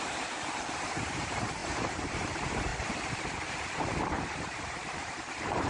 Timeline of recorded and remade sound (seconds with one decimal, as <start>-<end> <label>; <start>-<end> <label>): 0.0-2.7 remade; 2.7-3.5 recorded; 3.5-5.7 remade